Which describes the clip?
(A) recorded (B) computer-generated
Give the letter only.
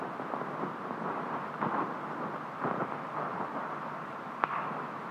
A